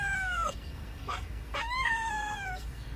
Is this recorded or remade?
remade